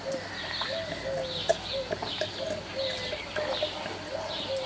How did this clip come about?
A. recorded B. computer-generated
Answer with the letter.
A